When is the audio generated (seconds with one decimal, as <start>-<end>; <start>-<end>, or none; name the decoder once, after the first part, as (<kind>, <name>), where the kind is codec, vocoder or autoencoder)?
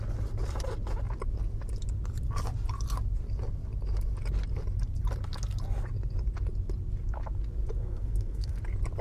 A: 7.8-8.6 (codec, SNAC)